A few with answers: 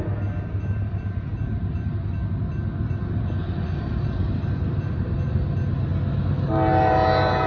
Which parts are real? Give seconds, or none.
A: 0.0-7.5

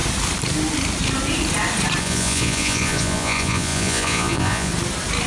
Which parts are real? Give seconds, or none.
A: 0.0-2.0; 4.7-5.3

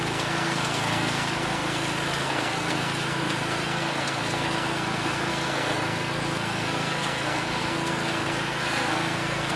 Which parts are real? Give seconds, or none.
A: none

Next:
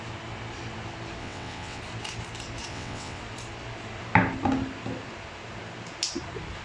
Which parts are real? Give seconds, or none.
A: 0.0-1.2; 1.8-2.7; 3.2-6.6

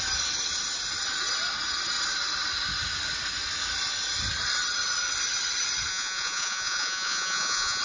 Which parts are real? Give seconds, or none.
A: 0.0-5.9

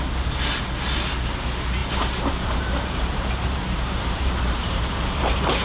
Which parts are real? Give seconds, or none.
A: 0.0-1.8